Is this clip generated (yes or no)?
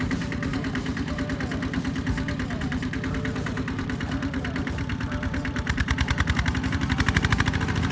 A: yes